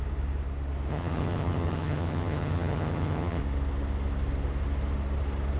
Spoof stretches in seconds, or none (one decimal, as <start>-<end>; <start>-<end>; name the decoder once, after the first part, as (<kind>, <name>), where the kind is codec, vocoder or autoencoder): 0.9-3.4 (vocoder, HiFi-GAN)